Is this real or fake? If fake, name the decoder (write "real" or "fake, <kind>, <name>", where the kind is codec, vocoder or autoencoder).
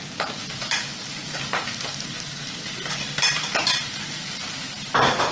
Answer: real